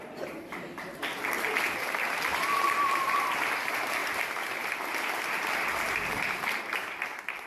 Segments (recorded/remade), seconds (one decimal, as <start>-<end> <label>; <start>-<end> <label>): 0.0-2.3 recorded; 2.3-3.2 remade; 3.2-4.0 recorded; 4.0-5.5 remade; 5.5-7.5 recorded